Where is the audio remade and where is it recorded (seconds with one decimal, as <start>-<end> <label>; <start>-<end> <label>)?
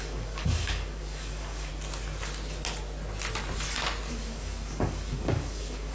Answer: 0.0-1.7 remade; 1.7-4.1 recorded; 4.1-5.9 remade